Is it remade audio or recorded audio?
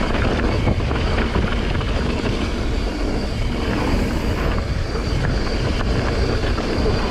recorded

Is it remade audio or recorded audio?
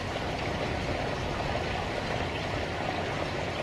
recorded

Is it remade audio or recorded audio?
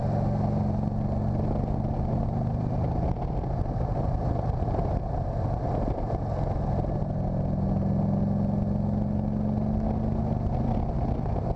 recorded